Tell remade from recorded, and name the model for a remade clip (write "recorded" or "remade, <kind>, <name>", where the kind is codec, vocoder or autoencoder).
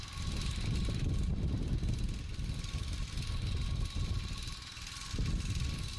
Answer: recorded